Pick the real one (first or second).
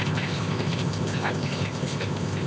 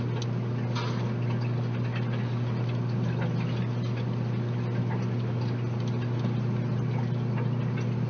second